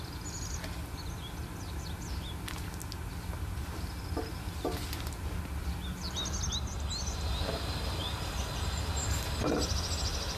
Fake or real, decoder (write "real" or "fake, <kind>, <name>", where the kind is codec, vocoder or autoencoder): real